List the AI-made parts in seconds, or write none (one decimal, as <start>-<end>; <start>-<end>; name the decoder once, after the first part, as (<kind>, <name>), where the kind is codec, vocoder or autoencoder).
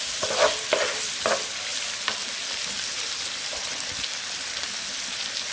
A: none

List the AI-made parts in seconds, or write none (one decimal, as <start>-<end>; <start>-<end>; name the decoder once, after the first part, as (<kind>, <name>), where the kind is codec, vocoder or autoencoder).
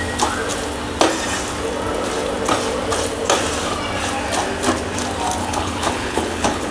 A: 5.4-6.7 (codec, HILCodec)